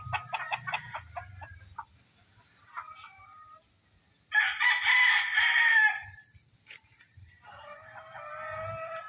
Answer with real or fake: real